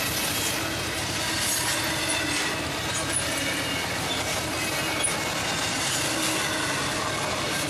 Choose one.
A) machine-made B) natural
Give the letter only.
B